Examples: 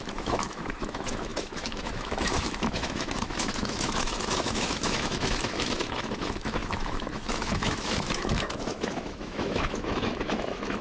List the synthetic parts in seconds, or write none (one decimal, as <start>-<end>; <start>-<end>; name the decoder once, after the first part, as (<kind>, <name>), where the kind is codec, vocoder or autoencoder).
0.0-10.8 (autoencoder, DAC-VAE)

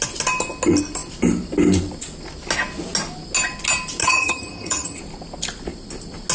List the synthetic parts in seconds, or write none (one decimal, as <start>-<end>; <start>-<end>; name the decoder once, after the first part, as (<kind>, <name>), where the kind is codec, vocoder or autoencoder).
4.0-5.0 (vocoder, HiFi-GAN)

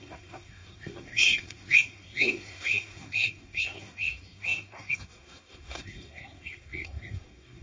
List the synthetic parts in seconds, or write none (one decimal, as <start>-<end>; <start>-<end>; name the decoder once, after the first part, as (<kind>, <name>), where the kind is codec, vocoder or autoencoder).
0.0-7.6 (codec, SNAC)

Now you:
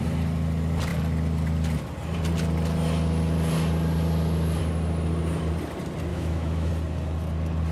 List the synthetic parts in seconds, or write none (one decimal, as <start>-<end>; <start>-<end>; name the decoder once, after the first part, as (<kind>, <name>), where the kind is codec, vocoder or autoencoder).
6.1-6.7 (autoencoder, DAC-VAE)